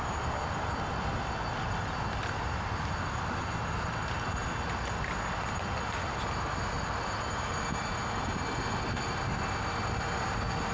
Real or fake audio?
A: real